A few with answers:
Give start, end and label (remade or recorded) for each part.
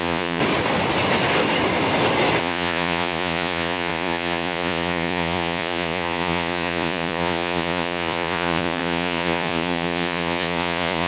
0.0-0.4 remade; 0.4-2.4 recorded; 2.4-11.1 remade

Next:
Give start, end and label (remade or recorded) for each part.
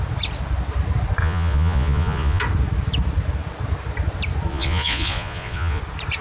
0.0-1.2 recorded; 1.2-2.4 remade; 2.4-4.5 recorded; 4.5-5.8 remade; 5.8-6.2 recorded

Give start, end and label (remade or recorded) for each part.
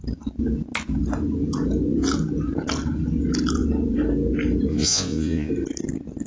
0.0-4.7 recorded; 4.7-5.5 remade; 5.5-6.3 recorded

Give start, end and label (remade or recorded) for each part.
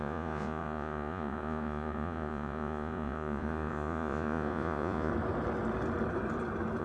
0.0-5.1 remade; 5.1-6.8 recorded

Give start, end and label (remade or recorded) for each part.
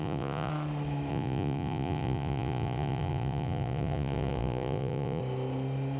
0.0-0.5 remade; 0.5-1.1 recorded; 1.1-5.2 remade; 5.2-6.0 recorded